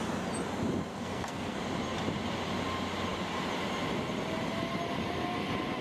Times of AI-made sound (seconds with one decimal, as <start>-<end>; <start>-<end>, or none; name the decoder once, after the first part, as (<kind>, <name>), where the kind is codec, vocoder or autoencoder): 0.9-1.6 (codec, SNAC)